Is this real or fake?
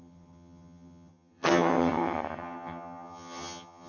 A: fake